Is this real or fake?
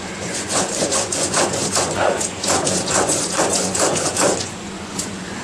fake